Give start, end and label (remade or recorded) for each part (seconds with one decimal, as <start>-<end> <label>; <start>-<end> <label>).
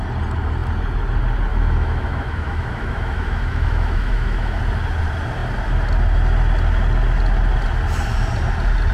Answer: 0.0-1.5 recorded; 1.5-4.6 remade; 4.6-8.9 recorded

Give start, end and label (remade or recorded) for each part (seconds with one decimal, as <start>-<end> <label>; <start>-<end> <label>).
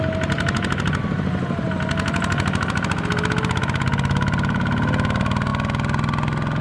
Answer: 0.0-6.6 recorded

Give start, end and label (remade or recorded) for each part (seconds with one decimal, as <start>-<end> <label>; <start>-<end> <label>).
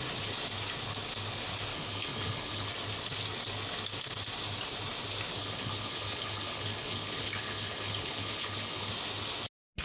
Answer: 0.0-1.7 recorded; 1.7-2.7 remade; 2.7-5.4 recorded; 5.4-8.9 remade; 8.9-9.8 recorded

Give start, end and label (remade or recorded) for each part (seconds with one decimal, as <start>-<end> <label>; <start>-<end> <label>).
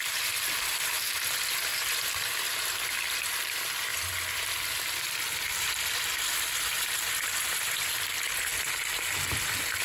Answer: 0.0-8.5 remade; 8.5-9.8 recorded